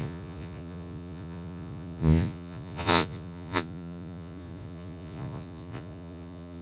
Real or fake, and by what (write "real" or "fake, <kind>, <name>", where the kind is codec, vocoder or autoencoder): fake, vocoder, Vocos